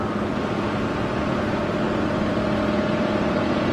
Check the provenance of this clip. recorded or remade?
recorded